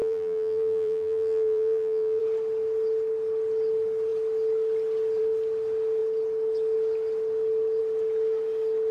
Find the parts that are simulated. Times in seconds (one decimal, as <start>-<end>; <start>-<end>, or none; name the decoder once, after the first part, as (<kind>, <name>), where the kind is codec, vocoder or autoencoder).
0.0-2.2 (vocoder, BigVGAN v2)